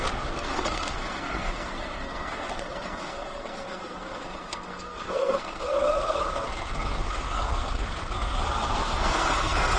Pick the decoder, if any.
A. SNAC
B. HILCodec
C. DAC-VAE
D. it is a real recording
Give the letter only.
A